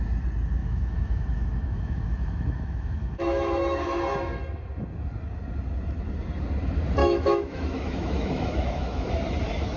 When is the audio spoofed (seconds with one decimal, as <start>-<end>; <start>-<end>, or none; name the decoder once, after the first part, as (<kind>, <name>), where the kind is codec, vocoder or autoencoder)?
0.6-4.0 (autoencoder, DAC-VAE); 7.0-9.1